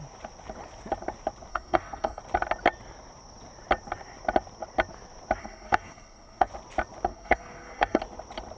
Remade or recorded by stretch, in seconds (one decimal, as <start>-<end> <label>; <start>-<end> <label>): 0.0-1.5 recorded; 1.5-2.2 remade; 2.2-5.4 recorded; 5.4-6.5 remade; 6.5-7.1 recorded; 7.1-8.0 remade; 8.0-8.6 recorded